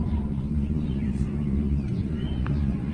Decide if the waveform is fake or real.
fake